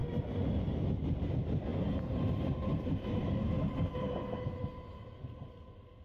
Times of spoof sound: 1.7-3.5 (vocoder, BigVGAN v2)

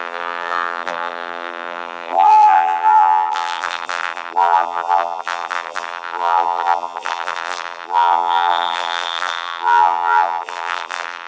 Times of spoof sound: 0.0-11.3 (vocoder, BigVGAN v2)

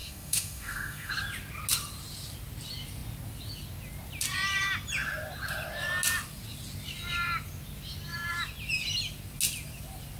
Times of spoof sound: 0.0-1.1 (autoencoder, DAC-VAE)

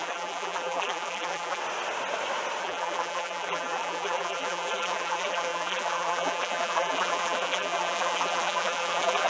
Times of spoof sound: 0.0-1.6 (vocoder, BigVGAN v2); 2.6-9.3

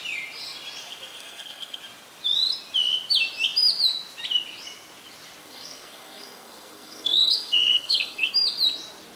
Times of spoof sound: 0.8-1.8 (codec, SNAC); 5.4-8.3